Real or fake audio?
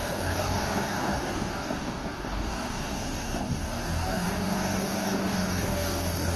fake